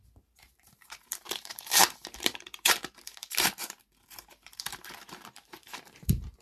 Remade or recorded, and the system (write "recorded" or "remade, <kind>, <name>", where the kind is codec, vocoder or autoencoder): remade, vocoder, BigVGAN v2